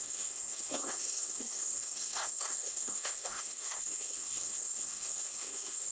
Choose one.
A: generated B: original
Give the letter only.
A